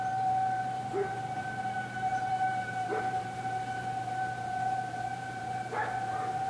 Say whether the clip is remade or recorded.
remade